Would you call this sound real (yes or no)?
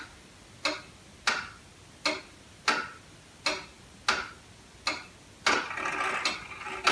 yes